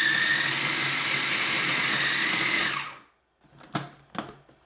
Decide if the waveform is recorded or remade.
recorded